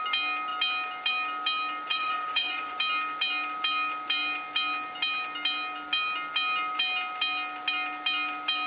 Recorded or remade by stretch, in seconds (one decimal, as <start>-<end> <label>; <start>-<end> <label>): 0.0-1.9 recorded; 1.9-2.8 remade; 2.8-8.7 recorded